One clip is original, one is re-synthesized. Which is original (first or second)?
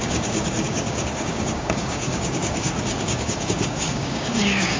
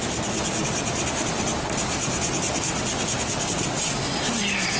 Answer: second